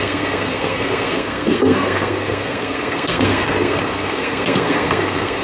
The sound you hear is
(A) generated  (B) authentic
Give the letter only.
A